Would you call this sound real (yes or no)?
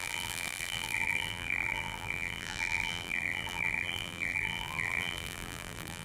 no